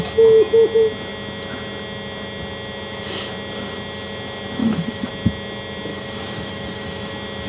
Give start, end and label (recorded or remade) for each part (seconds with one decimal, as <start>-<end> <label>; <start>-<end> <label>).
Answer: 0.0-4.6 recorded; 4.6-5.1 remade; 5.1-5.9 recorded; 5.9-7.1 remade; 7.1-7.5 recorded